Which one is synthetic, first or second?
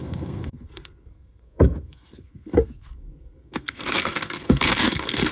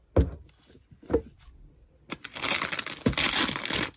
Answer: first